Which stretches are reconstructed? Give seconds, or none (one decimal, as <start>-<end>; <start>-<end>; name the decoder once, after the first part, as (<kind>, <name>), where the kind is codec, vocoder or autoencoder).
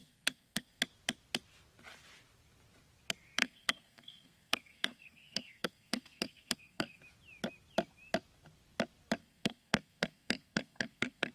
0.0-0.8 (codec, SNAC); 3.4-7.0; 9.2-11.3